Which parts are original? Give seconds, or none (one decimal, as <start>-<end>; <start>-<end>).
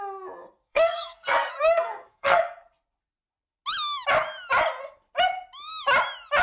0.0-0.6; 2.8-6.4